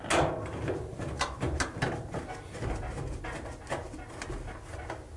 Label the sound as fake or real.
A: real